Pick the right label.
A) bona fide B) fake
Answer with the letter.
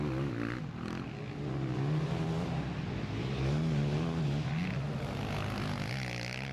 A